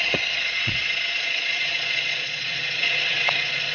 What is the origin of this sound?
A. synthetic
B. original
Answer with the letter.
A